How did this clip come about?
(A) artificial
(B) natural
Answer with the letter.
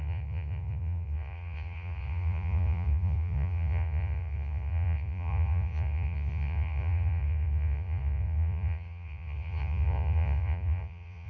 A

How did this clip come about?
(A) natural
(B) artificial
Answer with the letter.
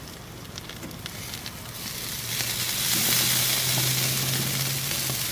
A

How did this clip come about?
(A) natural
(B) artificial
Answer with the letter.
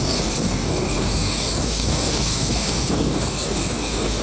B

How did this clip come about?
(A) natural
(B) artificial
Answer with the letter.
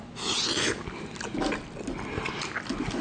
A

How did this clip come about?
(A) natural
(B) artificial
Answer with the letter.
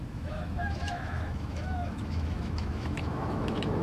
B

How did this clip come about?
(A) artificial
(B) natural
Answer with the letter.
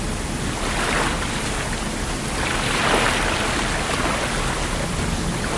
B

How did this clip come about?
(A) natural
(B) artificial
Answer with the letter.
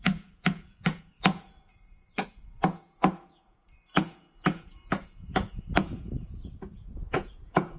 B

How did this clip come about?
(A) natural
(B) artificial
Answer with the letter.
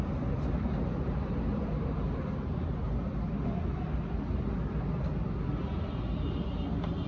A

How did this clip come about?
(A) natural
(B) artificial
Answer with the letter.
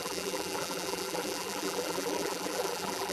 B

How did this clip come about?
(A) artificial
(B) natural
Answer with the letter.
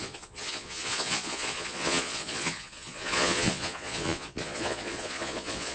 A